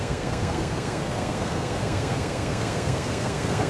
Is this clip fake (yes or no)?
yes